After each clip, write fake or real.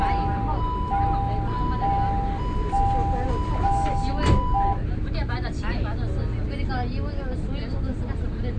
real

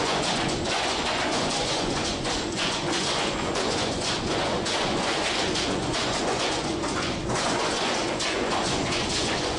fake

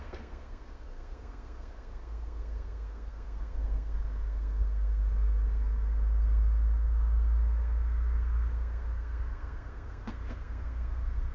fake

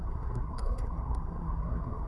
fake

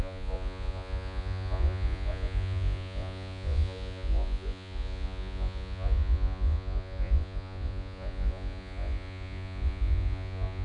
fake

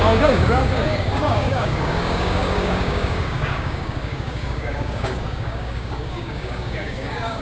fake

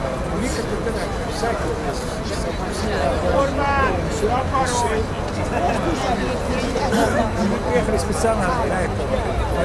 real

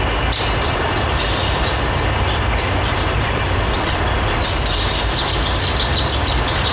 real